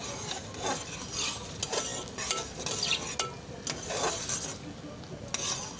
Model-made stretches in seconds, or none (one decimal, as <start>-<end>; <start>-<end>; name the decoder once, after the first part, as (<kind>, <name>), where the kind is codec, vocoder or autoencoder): none